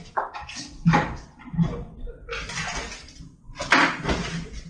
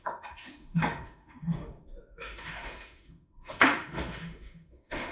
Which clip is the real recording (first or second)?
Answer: first